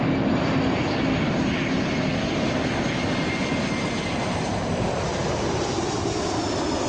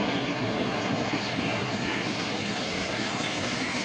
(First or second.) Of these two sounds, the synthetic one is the second